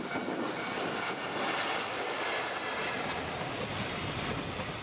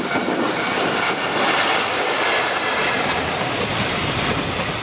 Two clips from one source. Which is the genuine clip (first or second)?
first